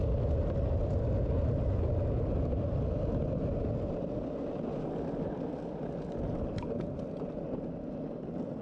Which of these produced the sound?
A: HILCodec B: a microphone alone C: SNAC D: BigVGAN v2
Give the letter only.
B